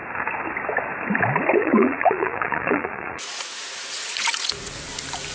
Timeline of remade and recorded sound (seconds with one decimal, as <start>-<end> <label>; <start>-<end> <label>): 0.0-1.6 recorded; 1.6-4.8 remade; 4.8-5.3 recorded